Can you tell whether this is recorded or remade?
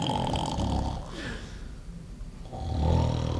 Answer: recorded